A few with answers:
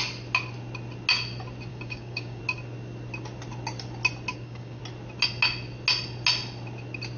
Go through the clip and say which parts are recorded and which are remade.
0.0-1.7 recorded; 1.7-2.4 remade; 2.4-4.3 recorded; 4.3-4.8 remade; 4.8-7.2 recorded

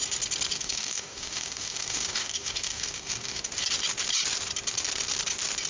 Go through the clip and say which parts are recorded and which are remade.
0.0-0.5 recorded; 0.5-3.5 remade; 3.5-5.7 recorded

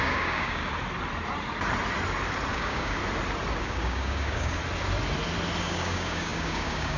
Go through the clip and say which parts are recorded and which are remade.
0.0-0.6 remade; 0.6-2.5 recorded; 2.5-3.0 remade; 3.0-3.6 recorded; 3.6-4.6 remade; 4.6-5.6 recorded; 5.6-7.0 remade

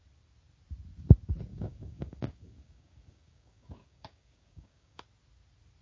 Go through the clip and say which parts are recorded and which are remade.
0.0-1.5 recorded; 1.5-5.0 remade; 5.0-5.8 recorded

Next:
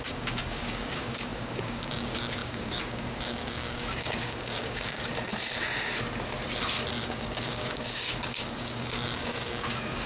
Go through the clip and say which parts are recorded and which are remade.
0.0-5.1 remade; 5.1-7.0 recorded; 7.0-10.1 remade

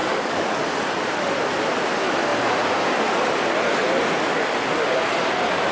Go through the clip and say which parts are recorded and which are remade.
0.0-0.6 remade; 0.6-5.7 recorded

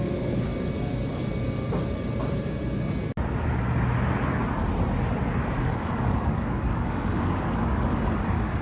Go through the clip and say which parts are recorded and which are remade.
0.0-0.5 remade; 0.5-5.6 recorded; 5.6-8.6 remade